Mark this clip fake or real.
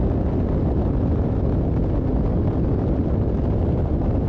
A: real